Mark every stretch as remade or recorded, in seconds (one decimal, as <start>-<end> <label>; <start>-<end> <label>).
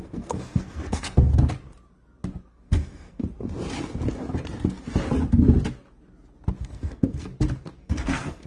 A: 0.0-1.3 remade; 1.3-2.5 recorded; 2.5-3.2 remade; 3.2-6.6 recorded; 6.6-7.3 remade; 7.3-7.8 recorded; 7.8-8.5 remade